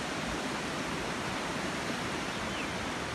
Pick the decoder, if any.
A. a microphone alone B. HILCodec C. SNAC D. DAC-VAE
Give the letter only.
A